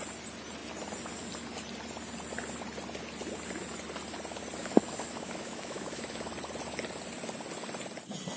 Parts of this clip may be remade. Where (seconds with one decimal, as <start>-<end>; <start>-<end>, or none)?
4.6-6.3